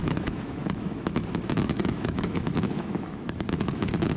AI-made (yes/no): yes